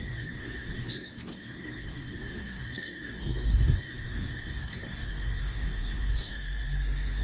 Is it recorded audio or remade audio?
remade